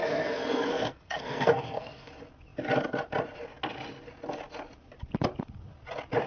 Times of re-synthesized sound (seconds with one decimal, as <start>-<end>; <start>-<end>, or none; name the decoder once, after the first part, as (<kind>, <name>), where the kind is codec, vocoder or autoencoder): 0.0-2.1 (codec, SNAC)